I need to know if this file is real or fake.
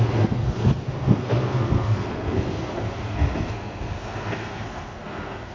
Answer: fake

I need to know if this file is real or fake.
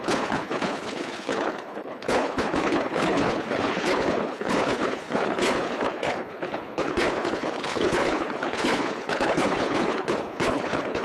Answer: fake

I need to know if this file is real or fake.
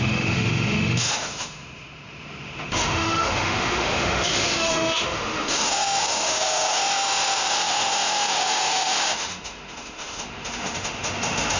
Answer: fake